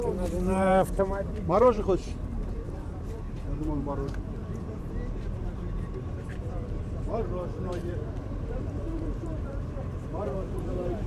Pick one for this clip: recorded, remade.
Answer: remade